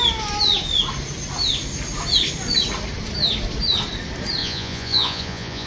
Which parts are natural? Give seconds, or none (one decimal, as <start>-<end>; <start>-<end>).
0.0-4.4